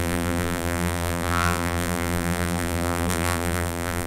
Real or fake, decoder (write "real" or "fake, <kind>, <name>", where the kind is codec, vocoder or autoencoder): fake, vocoder, BigVGAN v2